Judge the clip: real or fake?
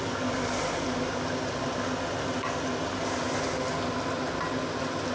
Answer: real